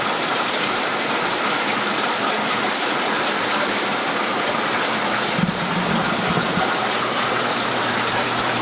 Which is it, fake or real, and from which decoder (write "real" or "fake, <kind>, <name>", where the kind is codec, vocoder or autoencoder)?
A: fake, vocoder, BigVGAN v2